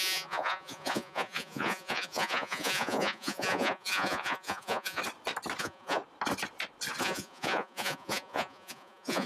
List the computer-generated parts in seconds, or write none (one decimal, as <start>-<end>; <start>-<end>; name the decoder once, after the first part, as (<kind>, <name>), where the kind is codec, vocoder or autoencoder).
0.0-5.0 (vocoder, Vocos); 5.6-6.0; 7.0-9.3